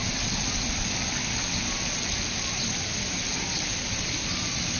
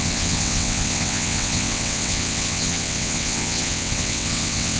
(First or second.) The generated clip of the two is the second